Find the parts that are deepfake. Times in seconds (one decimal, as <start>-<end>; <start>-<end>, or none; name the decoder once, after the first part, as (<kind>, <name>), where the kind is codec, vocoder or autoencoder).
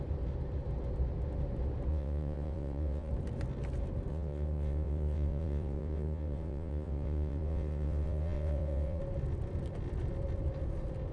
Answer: 1.9-3.1 (vocoder, WaveNeXt); 4.1-9.0